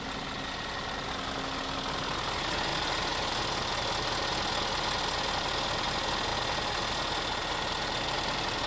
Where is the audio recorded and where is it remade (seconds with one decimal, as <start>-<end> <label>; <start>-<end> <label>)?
0.0-8.7 recorded